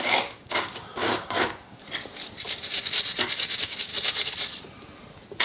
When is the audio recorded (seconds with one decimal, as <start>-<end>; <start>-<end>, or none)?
1.8-3.4; 3.9-5.4